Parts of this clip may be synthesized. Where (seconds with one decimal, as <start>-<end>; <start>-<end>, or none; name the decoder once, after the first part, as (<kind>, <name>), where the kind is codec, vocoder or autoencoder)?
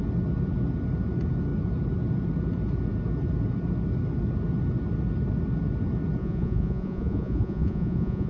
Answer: 6.2-8.3 (vocoder, Vocos)